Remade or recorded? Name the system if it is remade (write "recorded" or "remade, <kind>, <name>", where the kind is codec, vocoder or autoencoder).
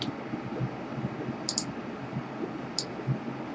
recorded